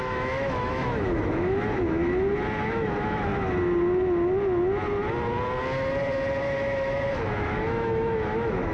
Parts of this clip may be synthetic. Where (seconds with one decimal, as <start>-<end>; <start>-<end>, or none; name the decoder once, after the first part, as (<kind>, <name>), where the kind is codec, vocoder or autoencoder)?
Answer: 0.0-2.0 (autoencoder, DAC-VAE); 2.6-3.3; 6.4-8.7